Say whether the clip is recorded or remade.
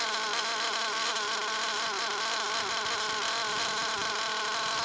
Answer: recorded